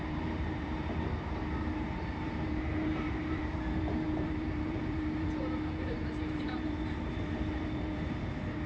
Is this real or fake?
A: fake